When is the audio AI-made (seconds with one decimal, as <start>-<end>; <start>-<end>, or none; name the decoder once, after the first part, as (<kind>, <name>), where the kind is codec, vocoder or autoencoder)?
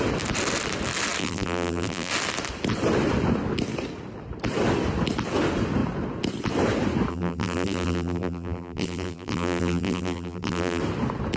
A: 1.2-2.1 (vocoder, BigVGAN v2); 7.1-10.8